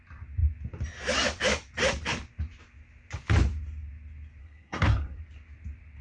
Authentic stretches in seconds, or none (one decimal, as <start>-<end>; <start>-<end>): 0.0-4.4; 5.2-6.0